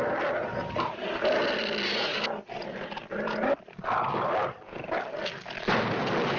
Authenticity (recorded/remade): recorded